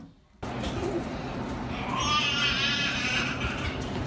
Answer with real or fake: real